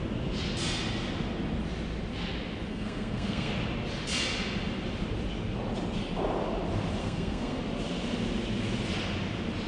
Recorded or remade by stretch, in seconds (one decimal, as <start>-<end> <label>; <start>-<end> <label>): 0.0-2.7 recorded; 2.7-3.5 remade; 3.5-7.0 recorded; 7.0-7.6 remade; 7.6-9.7 recorded